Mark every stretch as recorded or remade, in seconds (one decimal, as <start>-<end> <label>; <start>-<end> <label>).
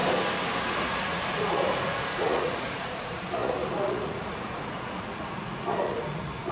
0.0-0.7 recorded; 0.7-6.5 remade